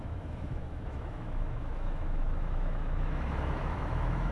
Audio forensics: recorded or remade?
remade